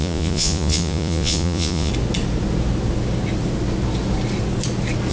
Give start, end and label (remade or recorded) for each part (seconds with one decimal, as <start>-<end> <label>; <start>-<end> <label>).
0.0-1.9 remade; 1.9-5.1 recorded